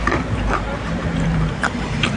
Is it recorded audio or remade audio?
remade